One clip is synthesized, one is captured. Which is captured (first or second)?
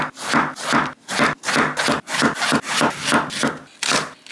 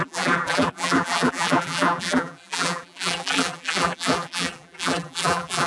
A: first